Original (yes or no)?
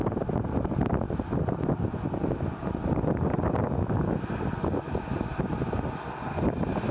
yes